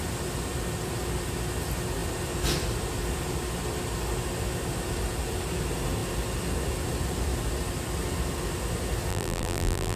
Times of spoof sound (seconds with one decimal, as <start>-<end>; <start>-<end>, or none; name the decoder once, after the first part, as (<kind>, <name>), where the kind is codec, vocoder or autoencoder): 9.1-10.0 (vocoder, BigVGAN v2)